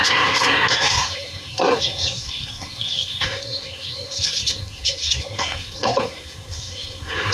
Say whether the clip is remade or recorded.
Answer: remade